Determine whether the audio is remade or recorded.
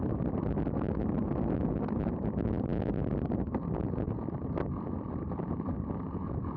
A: recorded